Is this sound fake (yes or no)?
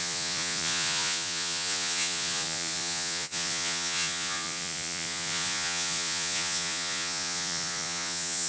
yes